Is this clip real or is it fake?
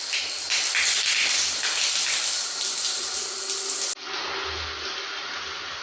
real